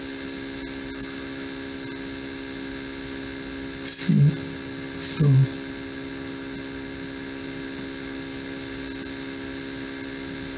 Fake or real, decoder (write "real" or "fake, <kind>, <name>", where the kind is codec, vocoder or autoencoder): real